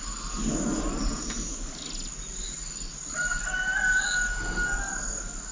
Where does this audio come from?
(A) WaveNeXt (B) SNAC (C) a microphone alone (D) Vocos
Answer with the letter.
C